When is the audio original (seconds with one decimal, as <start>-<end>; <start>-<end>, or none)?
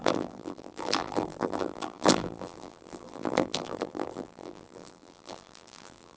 none